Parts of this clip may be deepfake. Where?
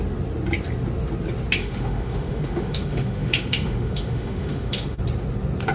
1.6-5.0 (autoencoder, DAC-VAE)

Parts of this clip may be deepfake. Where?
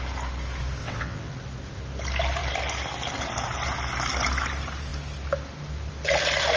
0.8-1.3 (vocoder, WaveNeXt)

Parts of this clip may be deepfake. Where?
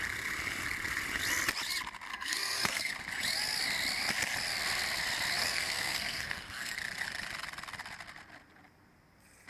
2.1-2.9 (codec, SNAC); 5.4-6.8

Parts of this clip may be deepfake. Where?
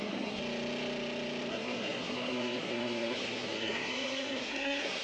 0.0-0.4 (codec, SNAC); 1.5-5.0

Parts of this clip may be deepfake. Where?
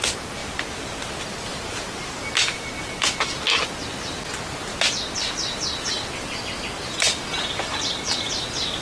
0.4-1.0 (vocoder, BigVGAN v2); 1.5-2.2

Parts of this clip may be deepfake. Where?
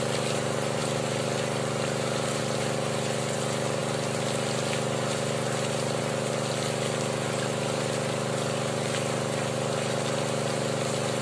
none